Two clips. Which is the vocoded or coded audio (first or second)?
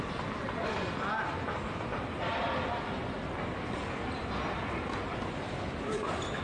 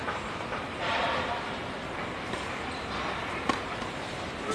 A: second